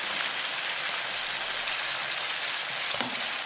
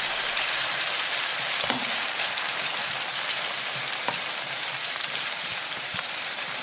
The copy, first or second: second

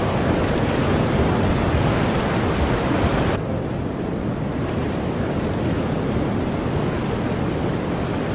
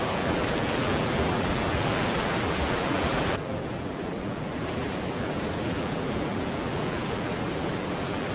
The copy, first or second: second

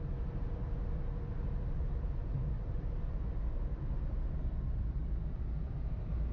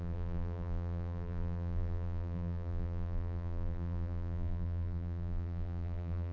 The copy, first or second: second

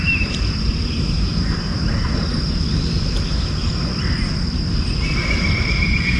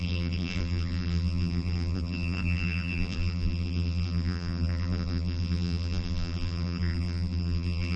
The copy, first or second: second